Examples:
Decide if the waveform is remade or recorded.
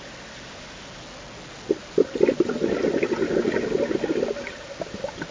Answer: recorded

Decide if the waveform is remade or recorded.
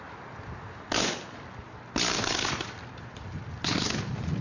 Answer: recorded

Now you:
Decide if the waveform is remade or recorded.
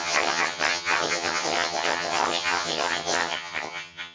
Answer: remade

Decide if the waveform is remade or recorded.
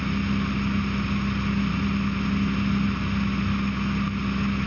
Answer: recorded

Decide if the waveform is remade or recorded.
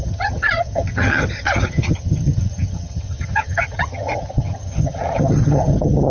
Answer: remade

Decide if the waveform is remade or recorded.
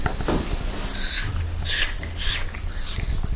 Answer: recorded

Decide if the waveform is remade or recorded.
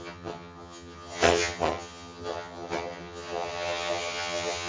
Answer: remade